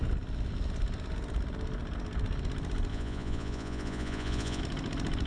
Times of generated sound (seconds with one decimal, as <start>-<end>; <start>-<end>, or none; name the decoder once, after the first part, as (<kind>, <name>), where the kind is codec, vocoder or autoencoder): 2.9-4.6 (vocoder, Vocos)